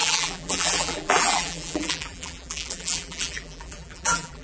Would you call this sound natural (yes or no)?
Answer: no